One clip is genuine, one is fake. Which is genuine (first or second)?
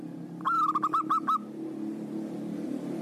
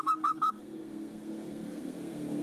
first